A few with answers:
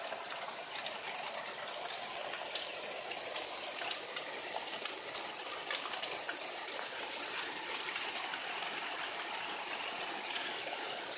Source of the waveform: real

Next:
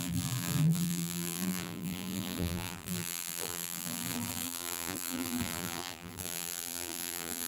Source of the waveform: fake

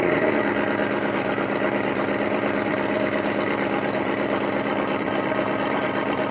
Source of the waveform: fake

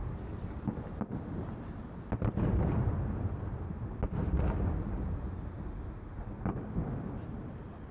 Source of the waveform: real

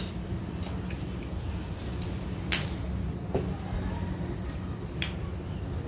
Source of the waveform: real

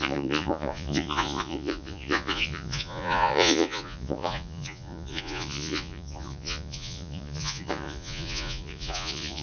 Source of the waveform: fake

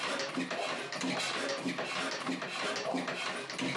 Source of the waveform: real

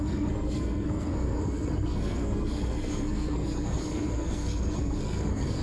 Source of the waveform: fake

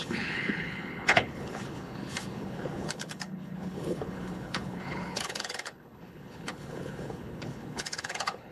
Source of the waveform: fake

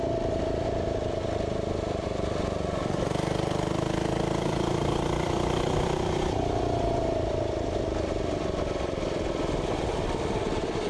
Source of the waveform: fake